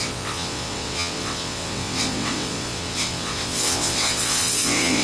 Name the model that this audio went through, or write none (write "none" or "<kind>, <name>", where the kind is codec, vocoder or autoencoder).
vocoder, WaveNeXt